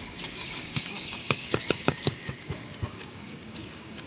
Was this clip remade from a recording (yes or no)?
yes